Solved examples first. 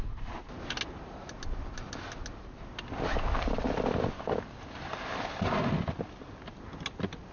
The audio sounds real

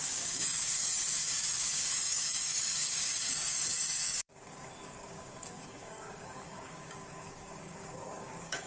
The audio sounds fake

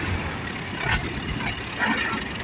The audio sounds fake